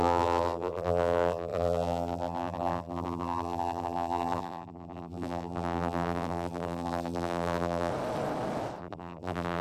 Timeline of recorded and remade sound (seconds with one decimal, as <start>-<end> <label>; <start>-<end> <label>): 0.0-7.9 remade; 7.9-8.8 recorded; 8.8-9.6 remade